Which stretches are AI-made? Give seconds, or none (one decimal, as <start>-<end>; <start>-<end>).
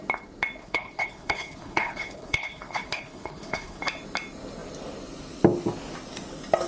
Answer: 0.6-3.8